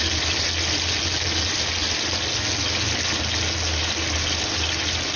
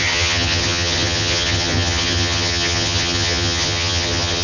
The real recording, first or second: first